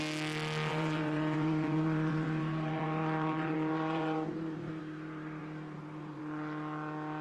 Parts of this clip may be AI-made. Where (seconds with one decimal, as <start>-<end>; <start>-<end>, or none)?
0.7-4.8; 5.4-6.2